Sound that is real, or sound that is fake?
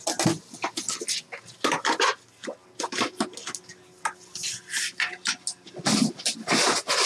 real